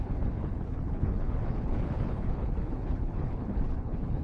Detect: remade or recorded remade